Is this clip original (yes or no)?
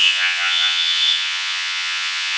no